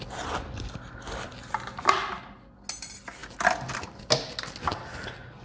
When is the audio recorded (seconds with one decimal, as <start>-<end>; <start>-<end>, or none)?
0.0-5.4